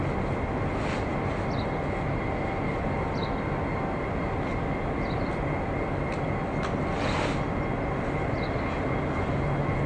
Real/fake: real